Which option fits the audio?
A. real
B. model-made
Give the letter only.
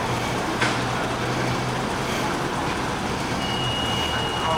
A